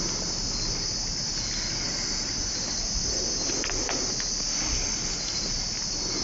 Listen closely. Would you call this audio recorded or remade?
recorded